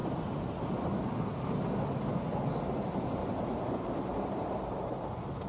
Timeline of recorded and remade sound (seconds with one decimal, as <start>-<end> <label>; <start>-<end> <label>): 0.0-3.2 recorded; 3.2-5.5 remade